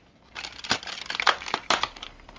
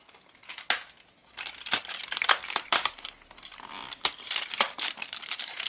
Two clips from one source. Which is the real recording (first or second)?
second